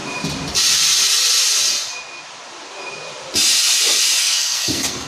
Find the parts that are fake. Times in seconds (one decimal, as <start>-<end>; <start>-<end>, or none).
4.2-5.1